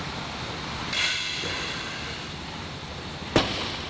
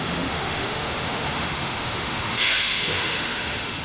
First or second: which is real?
first